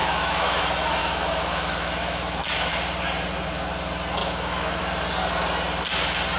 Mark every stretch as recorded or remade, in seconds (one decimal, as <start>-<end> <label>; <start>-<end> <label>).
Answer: 0.0-0.6 remade; 0.6-1.0 recorded; 1.0-2.7 remade; 2.7-4.2 recorded; 4.2-4.8 remade; 4.8-6.4 recorded